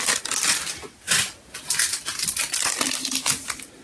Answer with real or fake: real